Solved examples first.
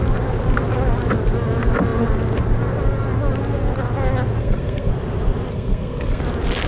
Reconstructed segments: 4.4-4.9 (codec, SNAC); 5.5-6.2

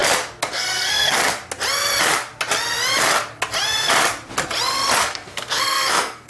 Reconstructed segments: 0.5-1.2 (codec, SNAC); 5.0-6.3

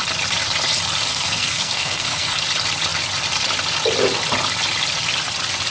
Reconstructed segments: 1.1-2.4 (codec, SNAC)

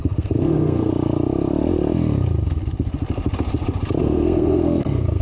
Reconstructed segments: 0.0-0.9 (codec, SNAC); 4.0-5.2

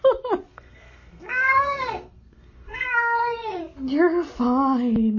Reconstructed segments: 0.5-3.6 (codec, SNAC)

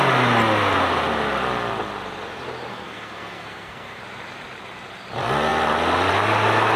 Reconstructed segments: 2.7-4.0 (codec, SNAC)

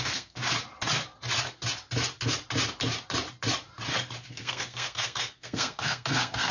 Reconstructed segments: 0.0-0.4 (codec, SNAC); 4.3-6.5

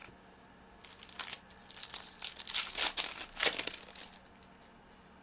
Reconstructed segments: none